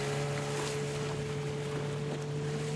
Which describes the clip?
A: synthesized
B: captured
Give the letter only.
B